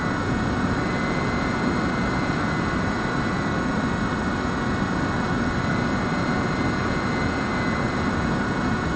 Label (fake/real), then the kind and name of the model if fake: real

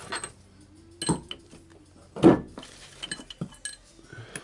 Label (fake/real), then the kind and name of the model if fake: real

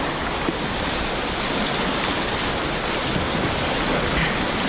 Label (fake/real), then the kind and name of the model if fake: real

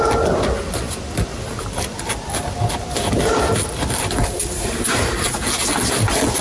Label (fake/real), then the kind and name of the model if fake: real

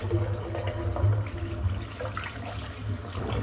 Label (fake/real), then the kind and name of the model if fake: real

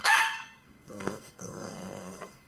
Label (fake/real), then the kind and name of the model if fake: fake, codec, SNAC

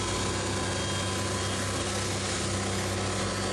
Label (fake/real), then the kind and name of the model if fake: real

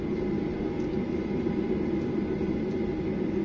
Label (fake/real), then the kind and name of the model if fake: real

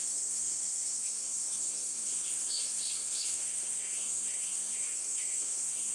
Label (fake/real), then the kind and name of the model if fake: fake, codec, SNAC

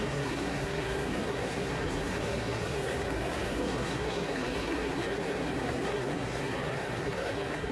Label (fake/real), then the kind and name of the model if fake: fake, codec, SNAC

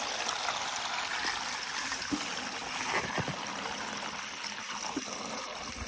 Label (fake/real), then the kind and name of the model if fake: real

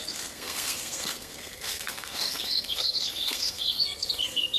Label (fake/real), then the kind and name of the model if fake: fake, codec, SNAC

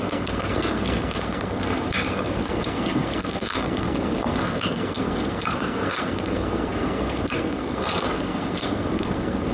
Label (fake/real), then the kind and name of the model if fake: fake, codec, SNAC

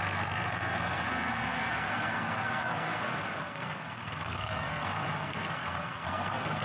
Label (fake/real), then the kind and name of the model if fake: fake, codec, SNAC